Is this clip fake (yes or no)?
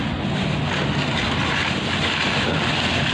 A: no